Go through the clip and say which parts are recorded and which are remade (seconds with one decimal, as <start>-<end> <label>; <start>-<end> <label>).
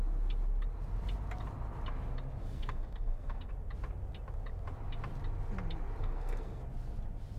0.0-2.4 recorded; 2.4-3.5 remade; 3.5-6.0 recorded; 6.0-6.6 remade; 6.6-7.4 recorded